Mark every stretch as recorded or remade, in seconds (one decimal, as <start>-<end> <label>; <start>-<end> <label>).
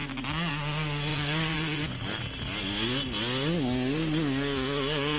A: 0.0-1.1 recorded; 1.1-2.0 remade; 2.0-5.2 recorded